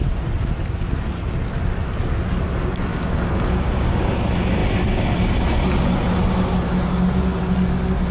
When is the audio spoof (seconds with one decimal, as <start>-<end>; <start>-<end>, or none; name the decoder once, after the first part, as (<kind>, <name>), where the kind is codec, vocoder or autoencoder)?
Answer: 2.9-3.9 (codec, DAC)